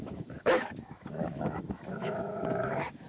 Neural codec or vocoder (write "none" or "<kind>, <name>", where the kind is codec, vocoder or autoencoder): autoencoder, DAC-VAE